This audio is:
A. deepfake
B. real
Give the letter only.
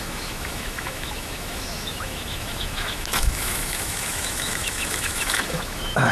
A